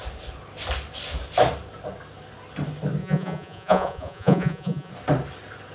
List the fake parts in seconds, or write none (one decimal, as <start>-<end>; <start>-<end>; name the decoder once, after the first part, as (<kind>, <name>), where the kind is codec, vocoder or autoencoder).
3.0-4.9 (vocoder, Vocos)